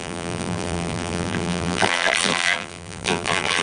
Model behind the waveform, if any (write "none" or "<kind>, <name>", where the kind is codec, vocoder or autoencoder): vocoder, BigVGAN v2